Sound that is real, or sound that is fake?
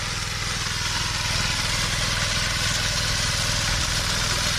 real